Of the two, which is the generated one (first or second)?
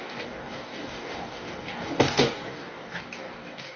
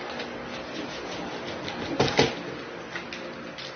first